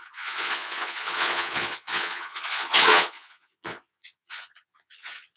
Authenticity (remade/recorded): remade